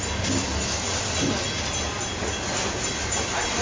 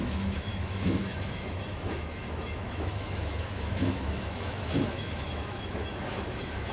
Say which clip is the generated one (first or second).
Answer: second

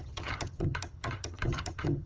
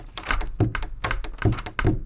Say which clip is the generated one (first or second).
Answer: first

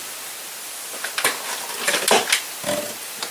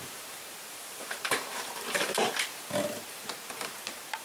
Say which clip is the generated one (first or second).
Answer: second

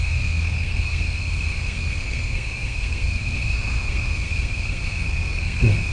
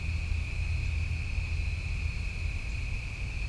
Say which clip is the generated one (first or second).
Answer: first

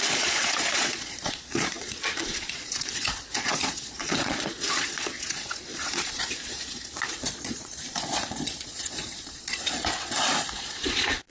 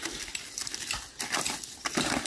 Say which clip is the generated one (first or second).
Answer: first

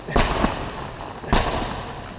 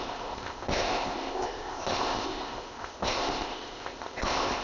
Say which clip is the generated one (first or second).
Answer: second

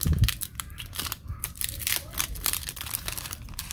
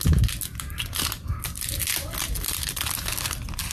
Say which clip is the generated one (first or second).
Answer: first